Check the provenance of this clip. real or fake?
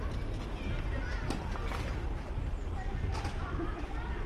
real